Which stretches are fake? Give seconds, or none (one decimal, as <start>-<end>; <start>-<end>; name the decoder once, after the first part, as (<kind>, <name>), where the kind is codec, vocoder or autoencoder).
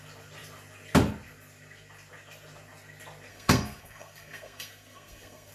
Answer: 3.3-5.5 (codec, SNAC)